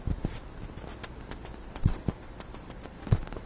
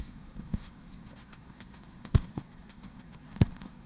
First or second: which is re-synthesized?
second